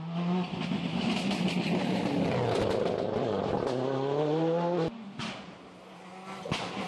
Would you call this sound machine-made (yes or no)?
no